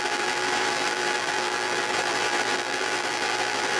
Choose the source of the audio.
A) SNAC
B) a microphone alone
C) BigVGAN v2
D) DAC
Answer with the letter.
C